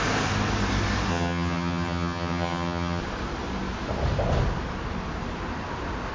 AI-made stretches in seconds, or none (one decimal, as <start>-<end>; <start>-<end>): 1.1-3.0